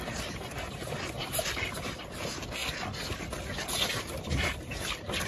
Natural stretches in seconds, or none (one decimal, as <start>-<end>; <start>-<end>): 0.0-1.2; 2.0-5.3